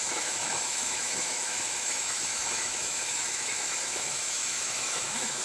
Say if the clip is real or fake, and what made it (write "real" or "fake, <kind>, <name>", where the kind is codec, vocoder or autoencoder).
fake, autoencoder, DAC-VAE